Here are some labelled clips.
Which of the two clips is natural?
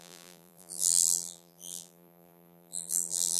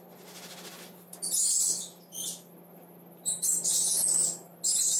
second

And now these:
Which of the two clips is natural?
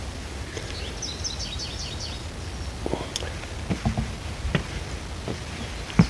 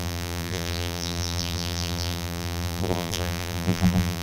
first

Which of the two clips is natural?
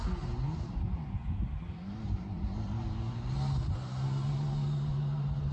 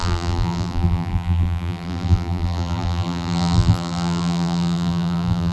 first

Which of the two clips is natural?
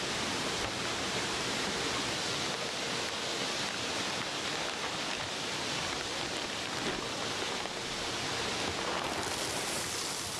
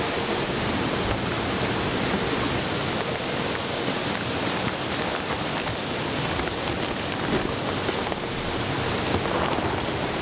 first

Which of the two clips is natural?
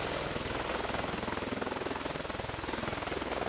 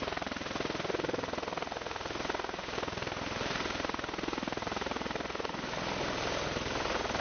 first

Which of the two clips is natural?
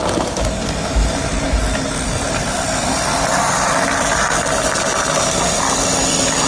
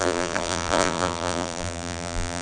first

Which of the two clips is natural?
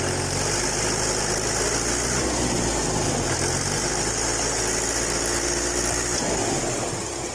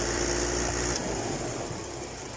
first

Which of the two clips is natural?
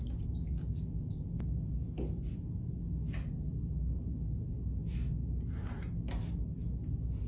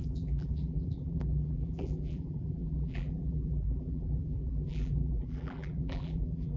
first